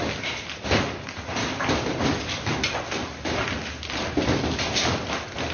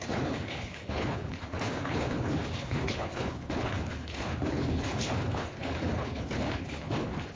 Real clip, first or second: first